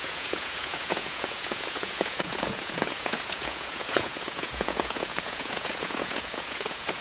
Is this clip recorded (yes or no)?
no